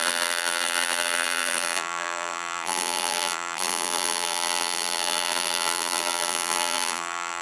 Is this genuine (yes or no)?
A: no